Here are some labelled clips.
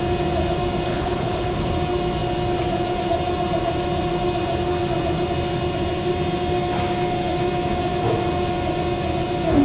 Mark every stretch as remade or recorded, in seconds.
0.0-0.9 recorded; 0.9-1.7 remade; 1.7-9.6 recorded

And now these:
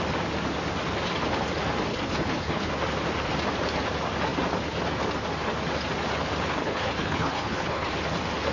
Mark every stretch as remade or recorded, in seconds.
0.0-1.9 recorded; 1.9-2.7 remade; 2.7-6.6 recorded; 6.6-7.9 remade; 7.9-8.5 recorded

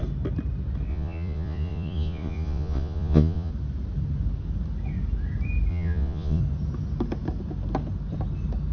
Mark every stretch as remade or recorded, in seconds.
0.0-0.9 recorded; 0.9-3.5 remade; 3.5-5.7 recorded; 5.7-6.4 remade; 6.4-8.7 recorded

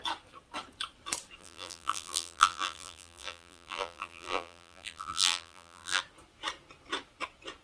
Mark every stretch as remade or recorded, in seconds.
0.0-1.4 recorded; 1.4-6.0 remade; 6.0-7.6 recorded

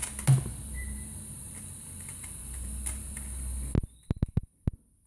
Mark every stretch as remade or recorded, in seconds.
0.0-0.5 recorded; 0.5-3.1 remade; 3.1-5.1 recorded

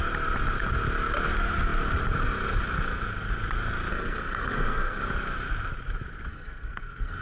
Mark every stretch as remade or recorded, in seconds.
0.0-3.9 recorded; 3.9-5.0 remade; 5.0-6.3 recorded; 6.3-7.2 remade

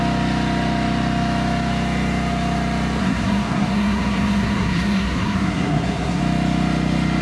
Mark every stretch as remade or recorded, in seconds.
0.0-3.0 recorded; 3.0-6.2 remade; 6.2-7.2 recorded

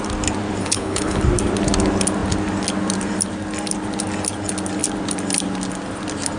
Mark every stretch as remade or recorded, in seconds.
0.0-0.6 recorded; 0.6-1.2 remade; 1.2-6.4 recorded